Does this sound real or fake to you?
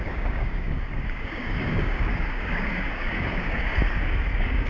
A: fake